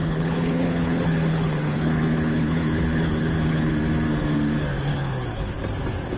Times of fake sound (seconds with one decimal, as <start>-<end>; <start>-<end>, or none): 0.0-3.7; 4.9-5.6